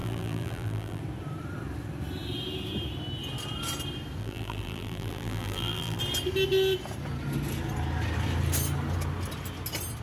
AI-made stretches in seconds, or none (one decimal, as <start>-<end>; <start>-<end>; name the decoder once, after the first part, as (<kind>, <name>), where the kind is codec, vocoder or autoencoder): 0.0-1.0 (vocoder, BigVGAN v2); 4.2-6.0